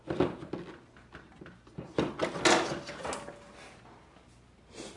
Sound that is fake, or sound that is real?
real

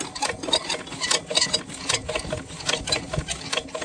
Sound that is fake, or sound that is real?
real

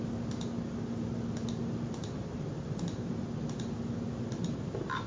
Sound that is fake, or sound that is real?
real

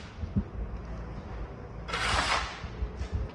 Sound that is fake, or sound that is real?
real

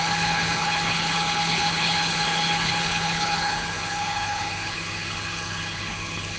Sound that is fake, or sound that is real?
fake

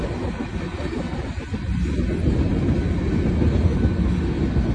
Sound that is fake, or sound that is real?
real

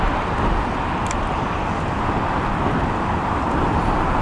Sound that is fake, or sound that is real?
real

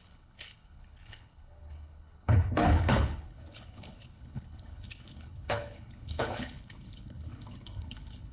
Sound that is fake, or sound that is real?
fake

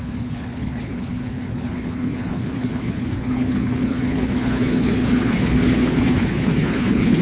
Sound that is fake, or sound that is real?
fake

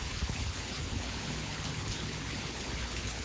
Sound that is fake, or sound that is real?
fake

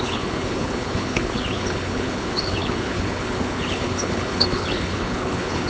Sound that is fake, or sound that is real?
fake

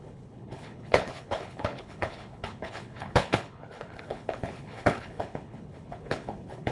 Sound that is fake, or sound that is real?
fake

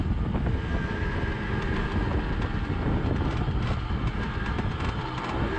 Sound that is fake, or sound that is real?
real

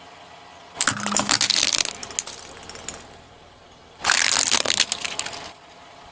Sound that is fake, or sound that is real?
real